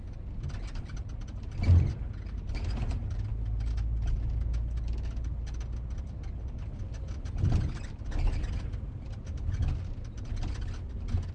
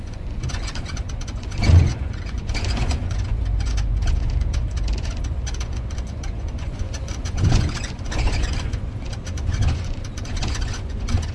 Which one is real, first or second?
first